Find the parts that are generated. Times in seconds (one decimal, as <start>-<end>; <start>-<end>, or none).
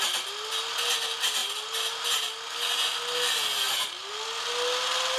none